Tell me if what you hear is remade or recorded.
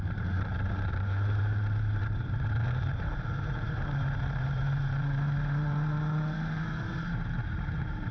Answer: remade